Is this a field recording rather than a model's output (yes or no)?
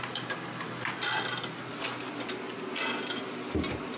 yes